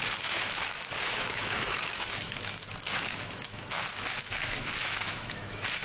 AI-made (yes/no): yes